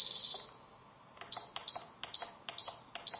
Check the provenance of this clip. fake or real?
real